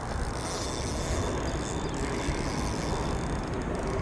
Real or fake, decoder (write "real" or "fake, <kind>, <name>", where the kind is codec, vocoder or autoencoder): real